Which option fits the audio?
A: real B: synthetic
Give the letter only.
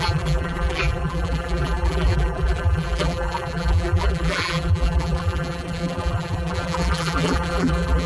B